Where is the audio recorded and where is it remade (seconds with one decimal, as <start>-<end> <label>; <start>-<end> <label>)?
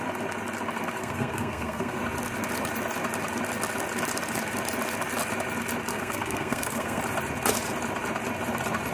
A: 0.0-1.0 recorded; 1.0-2.0 remade; 2.0-5.9 recorded; 5.9-7.0 remade; 7.0-8.9 recorded